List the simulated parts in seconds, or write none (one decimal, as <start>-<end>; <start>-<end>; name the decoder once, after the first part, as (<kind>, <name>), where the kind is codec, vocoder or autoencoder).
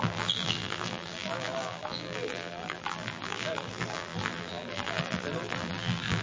0.0-6.2 (vocoder, BigVGAN v2)